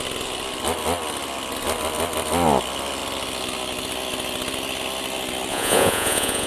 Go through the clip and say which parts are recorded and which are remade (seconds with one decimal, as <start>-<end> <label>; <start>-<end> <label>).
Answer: 0.0-5.5 recorded; 5.5-6.5 remade